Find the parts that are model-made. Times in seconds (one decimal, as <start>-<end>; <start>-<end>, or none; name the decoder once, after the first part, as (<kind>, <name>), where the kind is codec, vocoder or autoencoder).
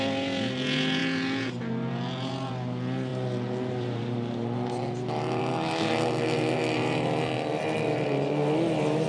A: none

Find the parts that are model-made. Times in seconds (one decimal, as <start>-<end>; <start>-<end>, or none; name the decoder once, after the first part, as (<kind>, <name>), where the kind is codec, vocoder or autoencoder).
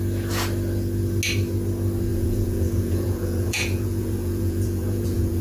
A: 2.1-5.4 (vocoder, Vocos)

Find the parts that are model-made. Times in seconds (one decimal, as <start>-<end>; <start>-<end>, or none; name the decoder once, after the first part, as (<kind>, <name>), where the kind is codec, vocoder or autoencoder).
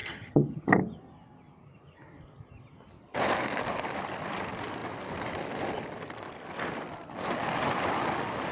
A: 0.0-0.7 (vocoder, HiFi-GAN)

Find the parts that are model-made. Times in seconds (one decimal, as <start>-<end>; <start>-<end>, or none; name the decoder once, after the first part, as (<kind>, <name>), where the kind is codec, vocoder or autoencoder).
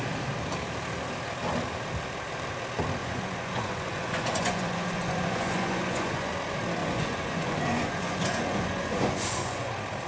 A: 3.0-6.3 (vocoder, Vocos); 6.8-9.7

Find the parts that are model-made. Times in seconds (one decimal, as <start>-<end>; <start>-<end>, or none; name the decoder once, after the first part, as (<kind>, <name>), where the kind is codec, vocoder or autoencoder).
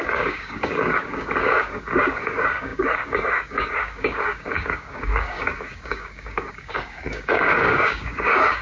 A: 0.0-8.6 (codec, DAC)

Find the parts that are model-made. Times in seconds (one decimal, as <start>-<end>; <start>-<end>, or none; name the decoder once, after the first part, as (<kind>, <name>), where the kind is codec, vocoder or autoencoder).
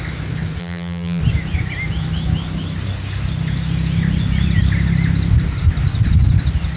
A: 0.6-1.2 (vocoder, BigVGAN v2)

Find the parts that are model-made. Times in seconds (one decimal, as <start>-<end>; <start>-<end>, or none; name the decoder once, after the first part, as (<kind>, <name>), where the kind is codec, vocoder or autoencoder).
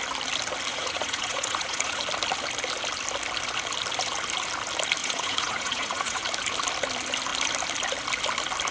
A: 0.7-2.0 (vocoder, Vocos); 5.0-6.2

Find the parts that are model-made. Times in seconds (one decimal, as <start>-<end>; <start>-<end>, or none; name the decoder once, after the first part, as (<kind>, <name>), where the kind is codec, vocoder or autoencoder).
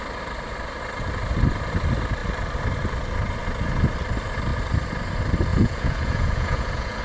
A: 5.5-7.0 (vocoder, Vocos)